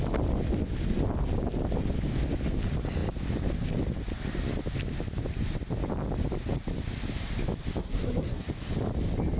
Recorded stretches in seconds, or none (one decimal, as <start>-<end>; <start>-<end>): 0.0-7.8; 8.4-9.4